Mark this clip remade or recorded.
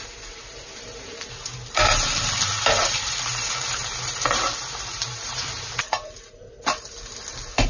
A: remade